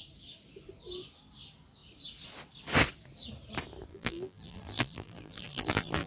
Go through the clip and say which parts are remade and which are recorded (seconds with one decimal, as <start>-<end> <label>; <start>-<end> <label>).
0.0-3.9 recorded; 3.9-6.1 remade